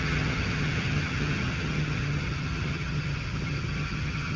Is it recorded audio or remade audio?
remade